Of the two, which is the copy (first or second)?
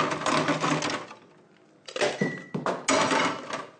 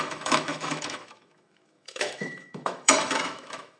second